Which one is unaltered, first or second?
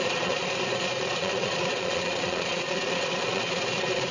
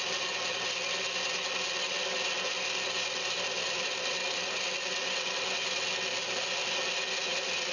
second